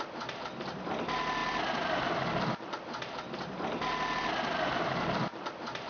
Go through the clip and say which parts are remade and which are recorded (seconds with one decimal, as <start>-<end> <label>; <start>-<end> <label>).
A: 0.0-5.9 recorded